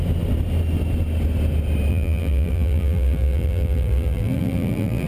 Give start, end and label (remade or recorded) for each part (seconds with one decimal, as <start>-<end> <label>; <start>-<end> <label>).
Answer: 0.0-1.9 recorded; 1.9-5.1 remade